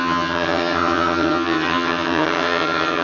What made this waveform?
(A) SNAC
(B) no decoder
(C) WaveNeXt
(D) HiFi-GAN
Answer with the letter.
D